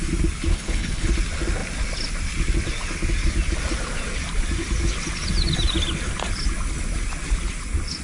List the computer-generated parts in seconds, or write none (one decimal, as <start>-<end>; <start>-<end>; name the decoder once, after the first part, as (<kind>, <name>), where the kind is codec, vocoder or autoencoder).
0.5-1.1 (codec, HILCodec)